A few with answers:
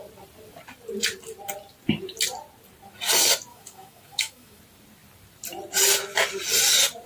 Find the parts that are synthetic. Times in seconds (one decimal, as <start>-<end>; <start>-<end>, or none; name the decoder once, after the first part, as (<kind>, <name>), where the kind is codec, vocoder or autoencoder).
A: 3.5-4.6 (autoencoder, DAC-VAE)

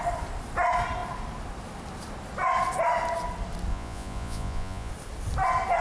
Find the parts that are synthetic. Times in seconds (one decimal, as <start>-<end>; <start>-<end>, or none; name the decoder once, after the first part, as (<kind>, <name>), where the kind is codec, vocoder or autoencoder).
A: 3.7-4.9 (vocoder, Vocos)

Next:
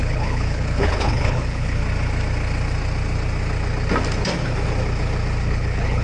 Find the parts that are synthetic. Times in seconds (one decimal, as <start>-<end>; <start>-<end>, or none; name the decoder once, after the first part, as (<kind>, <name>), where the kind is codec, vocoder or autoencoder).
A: 0.0-1.8 (codec, HILCodec); 5.4-6.0

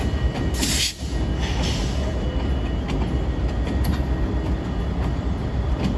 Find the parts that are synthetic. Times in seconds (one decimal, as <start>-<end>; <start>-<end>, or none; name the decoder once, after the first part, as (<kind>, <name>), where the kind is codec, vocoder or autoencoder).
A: none

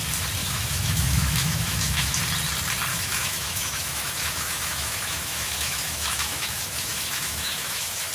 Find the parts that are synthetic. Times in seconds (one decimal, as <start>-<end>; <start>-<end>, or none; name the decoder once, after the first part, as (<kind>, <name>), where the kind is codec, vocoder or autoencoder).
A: 0.4-2.2 (autoencoder, DAC-VAE); 2.9-8.1

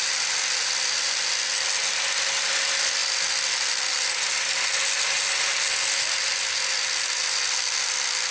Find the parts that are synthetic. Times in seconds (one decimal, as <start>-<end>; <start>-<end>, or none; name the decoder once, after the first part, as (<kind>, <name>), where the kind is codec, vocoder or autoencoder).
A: none